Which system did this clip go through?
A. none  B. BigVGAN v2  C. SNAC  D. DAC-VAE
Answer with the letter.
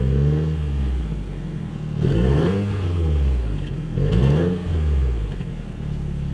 C